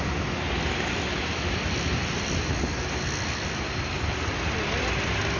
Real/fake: real